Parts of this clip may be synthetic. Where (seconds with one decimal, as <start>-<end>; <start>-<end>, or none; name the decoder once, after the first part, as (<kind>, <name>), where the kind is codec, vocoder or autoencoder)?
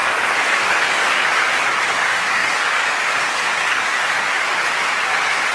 0.0-5.5 (codec, DAC)